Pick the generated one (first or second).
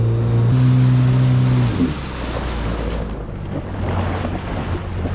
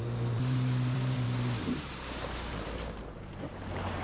second